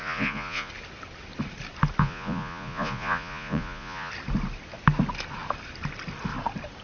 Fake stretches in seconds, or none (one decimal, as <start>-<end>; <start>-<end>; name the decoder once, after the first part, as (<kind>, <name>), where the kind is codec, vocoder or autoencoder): 0.0-0.7 (vocoder, Vocos); 2.0-4.1